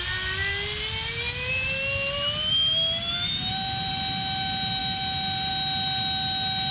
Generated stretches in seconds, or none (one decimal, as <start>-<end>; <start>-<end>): none

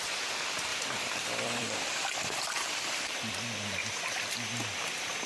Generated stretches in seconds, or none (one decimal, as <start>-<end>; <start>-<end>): 0.7-3.3